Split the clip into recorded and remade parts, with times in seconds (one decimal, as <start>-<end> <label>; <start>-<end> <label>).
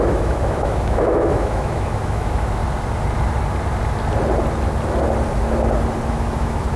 0.0-2.6 remade; 2.6-6.1 recorded; 6.1-6.8 remade